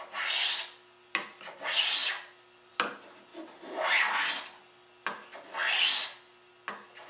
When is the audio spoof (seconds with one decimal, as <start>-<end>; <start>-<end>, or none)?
none

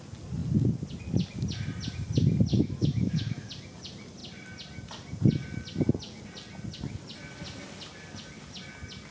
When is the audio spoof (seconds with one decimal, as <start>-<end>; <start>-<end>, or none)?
2.5-3.5

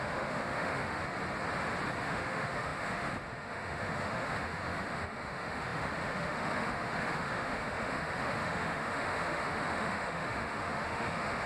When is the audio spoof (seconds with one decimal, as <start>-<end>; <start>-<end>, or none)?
0.0-1.0; 2.0-11.5

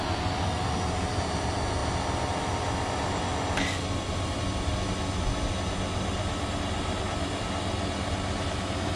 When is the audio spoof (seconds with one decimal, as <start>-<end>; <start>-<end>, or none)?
none